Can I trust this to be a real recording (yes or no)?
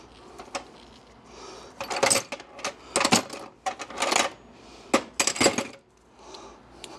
yes